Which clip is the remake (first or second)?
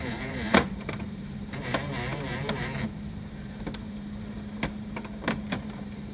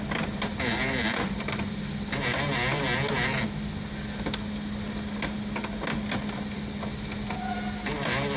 first